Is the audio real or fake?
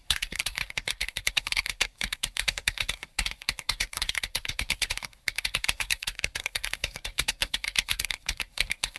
fake